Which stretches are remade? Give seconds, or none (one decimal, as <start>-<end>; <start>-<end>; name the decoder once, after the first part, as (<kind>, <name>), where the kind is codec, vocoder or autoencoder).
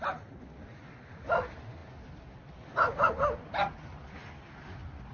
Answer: none